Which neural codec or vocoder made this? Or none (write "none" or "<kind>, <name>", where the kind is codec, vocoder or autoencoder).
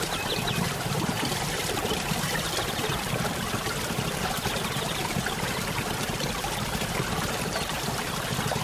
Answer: vocoder, BigVGAN v2